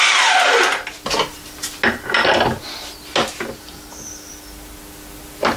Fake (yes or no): no